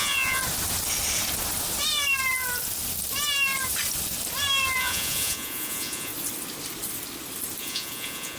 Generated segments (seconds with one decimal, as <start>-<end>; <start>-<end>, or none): 0.0-0.4; 4.8-6.1; 7.6-8.4